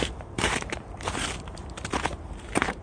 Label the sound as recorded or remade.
remade